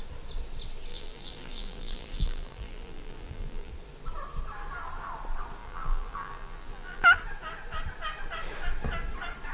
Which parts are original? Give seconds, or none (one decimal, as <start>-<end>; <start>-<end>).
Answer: 0.0-0.9; 3.7-5.6; 7.2-9.5